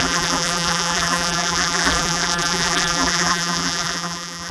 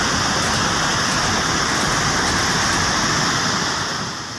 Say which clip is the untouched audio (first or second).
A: second